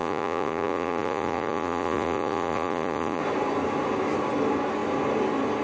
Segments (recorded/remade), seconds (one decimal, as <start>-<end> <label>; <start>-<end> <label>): 0.0-3.2 remade; 3.2-5.6 recorded